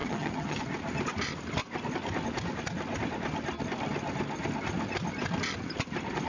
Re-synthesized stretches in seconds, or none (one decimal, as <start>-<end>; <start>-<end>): 0.0-0.6